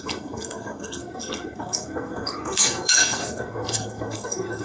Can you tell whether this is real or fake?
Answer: fake